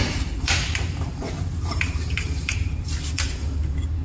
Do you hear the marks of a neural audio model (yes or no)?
yes